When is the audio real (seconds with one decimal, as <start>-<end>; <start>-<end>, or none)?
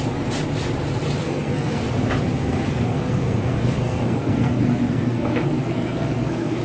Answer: 0.0-1.2; 1.8-2.4